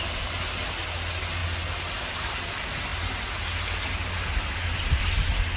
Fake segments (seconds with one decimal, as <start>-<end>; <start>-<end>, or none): none